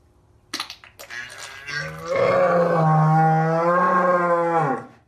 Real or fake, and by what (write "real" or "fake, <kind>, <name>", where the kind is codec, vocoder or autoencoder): real